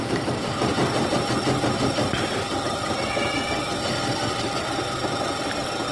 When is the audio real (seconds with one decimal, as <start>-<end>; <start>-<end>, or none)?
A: 3.4-5.9